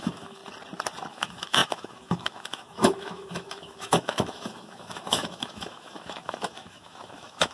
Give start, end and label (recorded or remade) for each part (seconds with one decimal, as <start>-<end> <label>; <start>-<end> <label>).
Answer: 0.0-0.4 remade; 0.4-1.1 recorded; 1.1-7.5 remade